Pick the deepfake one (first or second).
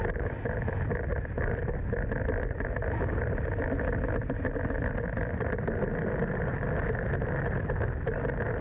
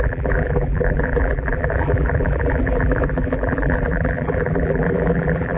second